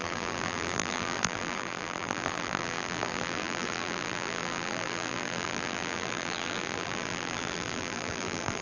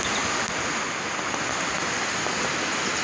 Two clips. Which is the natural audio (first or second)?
second